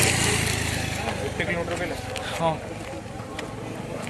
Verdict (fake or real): real